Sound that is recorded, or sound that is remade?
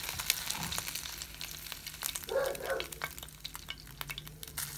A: recorded